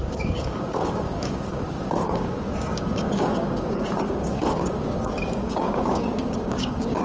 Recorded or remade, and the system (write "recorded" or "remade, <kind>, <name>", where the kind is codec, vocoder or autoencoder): remade, codec, DAC